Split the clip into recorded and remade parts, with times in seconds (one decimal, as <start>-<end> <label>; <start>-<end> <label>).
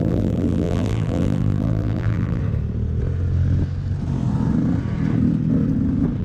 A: 0.0-2.4 remade; 2.4-6.2 recorded